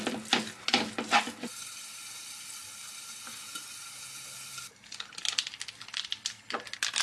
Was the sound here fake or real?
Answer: real